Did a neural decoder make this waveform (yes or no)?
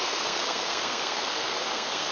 yes